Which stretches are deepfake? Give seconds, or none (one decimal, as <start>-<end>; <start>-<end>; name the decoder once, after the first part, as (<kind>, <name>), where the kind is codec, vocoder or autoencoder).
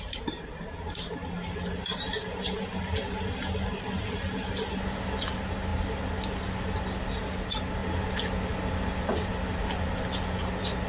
none